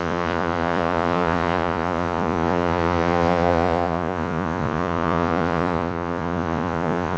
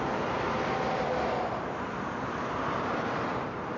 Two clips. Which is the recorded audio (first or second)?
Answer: second